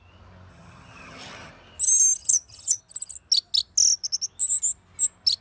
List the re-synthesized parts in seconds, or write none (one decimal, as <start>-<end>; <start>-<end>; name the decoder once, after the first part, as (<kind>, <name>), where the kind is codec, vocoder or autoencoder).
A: 0.5-1.5 (vocoder, HiFi-GAN); 2.2-2.8